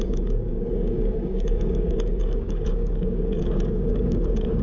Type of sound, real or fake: fake